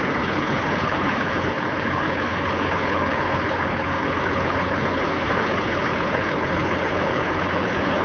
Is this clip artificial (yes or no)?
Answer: yes